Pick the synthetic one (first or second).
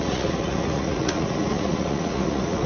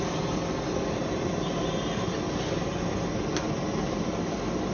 first